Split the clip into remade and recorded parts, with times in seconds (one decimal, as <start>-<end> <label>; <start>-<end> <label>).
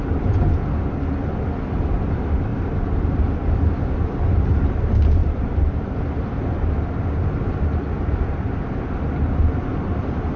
0.0-2.5 recorded; 2.5-4.8 remade; 4.8-5.2 recorded; 5.2-6.4 remade; 6.4-10.4 recorded